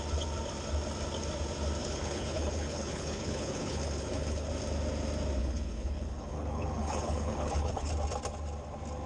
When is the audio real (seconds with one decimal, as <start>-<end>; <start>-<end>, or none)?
0.0-1.8; 4.5-5.4; 7.9-9.1